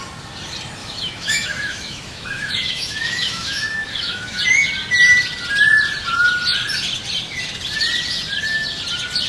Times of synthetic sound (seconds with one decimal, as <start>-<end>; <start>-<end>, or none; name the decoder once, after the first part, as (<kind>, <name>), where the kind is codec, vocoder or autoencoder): 0.8-4.4 (autoencoder, DAC-VAE)